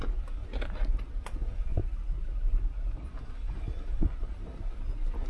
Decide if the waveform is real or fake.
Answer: real